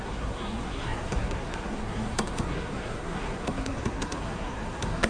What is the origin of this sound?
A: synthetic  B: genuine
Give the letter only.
A